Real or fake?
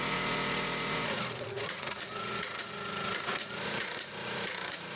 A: fake